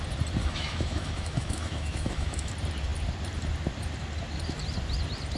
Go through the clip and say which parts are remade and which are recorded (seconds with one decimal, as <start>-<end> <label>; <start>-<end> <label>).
0.0-0.4 recorded; 0.4-2.5 remade; 2.5-5.4 recorded